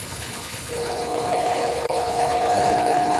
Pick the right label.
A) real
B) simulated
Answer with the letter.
B